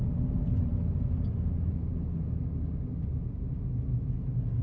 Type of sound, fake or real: real